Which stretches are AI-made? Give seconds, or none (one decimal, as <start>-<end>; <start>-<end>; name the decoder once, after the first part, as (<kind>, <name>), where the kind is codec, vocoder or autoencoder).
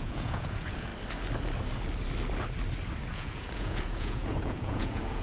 0.0-0.9 (vocoder, Vocos); 3.0-5.2